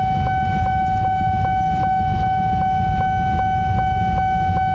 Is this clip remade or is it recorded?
recorded